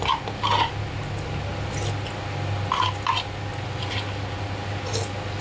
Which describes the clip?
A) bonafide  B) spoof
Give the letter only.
A